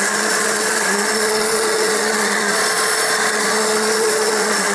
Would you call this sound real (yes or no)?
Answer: no